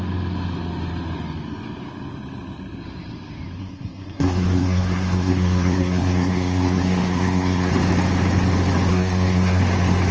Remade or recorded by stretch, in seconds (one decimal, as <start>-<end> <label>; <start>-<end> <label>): 0.0-3.6 recorded; 3.6-7.7 remade; 7.7-8.9 recorded; 8.9-9.6 remade; 9.6-10.1 recorded